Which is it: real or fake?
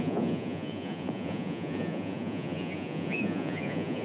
fake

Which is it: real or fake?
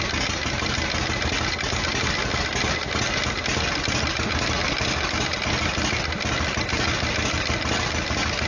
real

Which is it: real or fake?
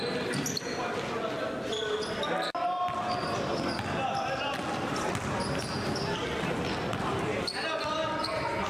real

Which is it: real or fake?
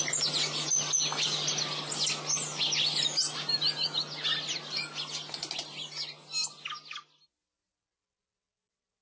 real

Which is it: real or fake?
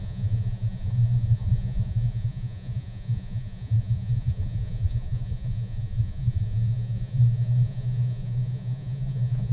fake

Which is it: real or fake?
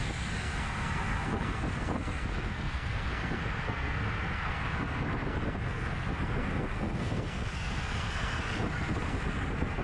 fake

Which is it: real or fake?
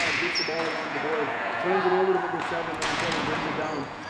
fake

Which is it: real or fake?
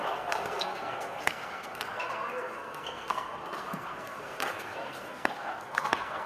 fake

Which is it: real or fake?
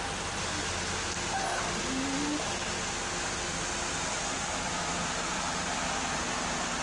real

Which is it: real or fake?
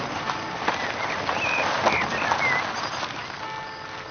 real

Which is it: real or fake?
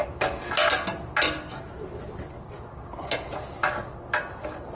real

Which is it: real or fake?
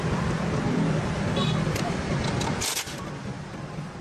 real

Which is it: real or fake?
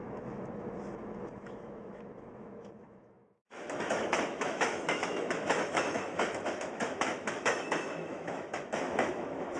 fake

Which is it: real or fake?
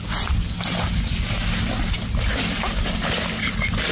real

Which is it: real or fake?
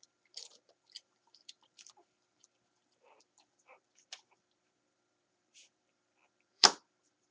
fake